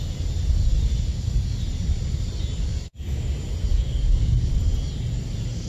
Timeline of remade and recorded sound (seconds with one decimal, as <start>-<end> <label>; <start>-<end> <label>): 0.0-1.1 recorded; 1.1-1.6 remade; 1.6-2.7 recorded; 2.7-3.3 remade; 3.3-3.7 recorded; 3.7-4.5 remade; 4.5-5.7 recorded